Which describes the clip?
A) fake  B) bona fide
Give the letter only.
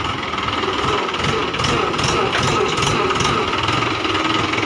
B